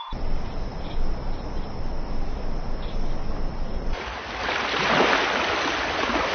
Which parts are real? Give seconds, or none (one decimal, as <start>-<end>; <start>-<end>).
0.0-6.3